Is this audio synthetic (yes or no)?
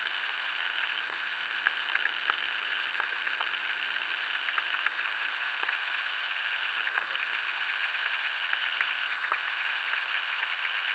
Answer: yes